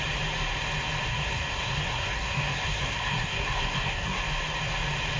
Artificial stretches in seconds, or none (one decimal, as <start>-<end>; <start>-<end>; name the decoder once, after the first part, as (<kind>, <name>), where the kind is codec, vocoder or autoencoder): 1.1-4.2 (codec, SNAC)